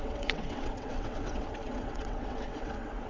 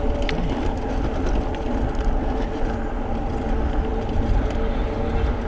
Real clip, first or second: second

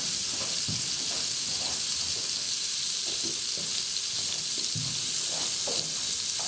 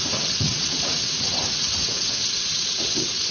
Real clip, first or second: first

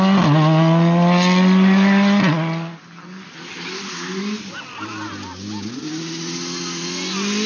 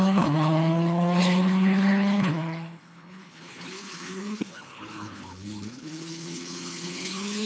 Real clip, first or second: first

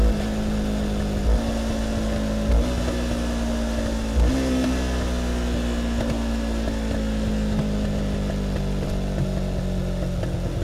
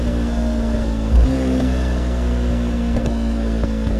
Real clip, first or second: first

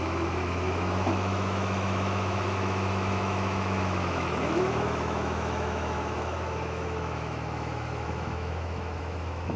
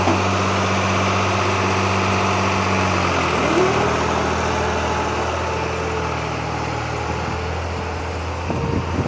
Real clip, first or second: second